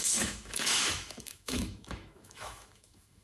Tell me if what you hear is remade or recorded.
remade